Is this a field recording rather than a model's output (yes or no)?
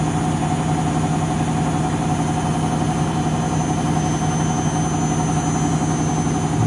yes